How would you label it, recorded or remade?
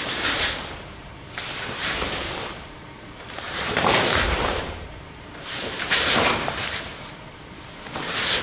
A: remade